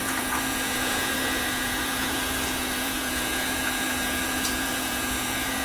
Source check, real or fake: fake